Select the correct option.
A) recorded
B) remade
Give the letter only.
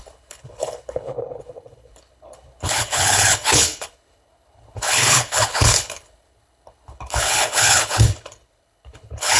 B